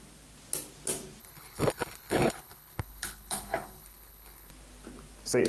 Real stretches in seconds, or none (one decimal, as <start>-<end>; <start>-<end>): 0.0-1.2; 4.5-5.5